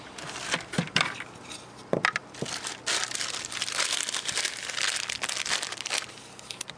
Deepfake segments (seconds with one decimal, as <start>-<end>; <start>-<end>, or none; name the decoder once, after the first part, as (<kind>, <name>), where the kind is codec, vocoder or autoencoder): none